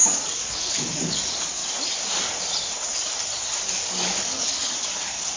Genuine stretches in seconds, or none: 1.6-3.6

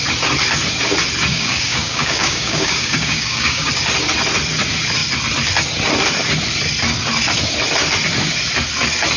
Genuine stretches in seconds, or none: 0.0-1.3; 3.7-9.2

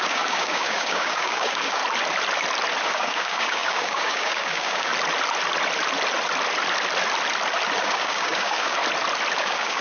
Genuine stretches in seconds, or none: 1.8-2.8; 4.9-7.8; 8.8-9.4

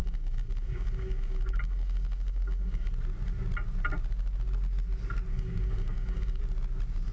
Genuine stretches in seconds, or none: 2.9-5.3; 6.4-7.1

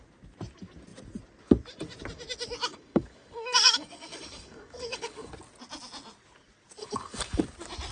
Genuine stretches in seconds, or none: 0.0-2.7; 5.3-6.8; 7.4-7.9

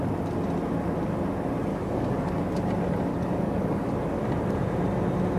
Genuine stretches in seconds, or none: 0.0-1.7; 2.3-3.1; 3.9-5.4

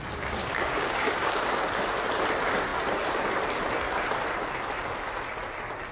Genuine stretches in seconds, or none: 0.0-0.4; 1.3-5.9

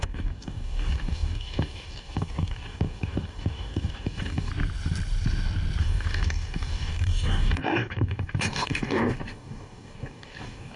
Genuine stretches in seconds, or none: 4.5-5.8